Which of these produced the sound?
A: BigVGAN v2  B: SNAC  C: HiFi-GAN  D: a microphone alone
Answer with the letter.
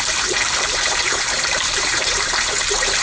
A